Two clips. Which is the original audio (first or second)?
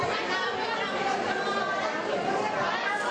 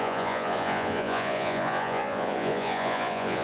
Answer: first